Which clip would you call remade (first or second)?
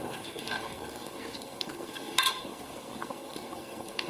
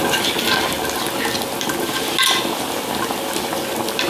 first